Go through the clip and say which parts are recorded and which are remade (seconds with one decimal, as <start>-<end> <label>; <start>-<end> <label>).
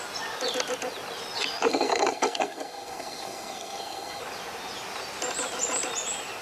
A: 0.0-1.7 recorded; 1.7-4.2 remade; 4.2-6.4 recorded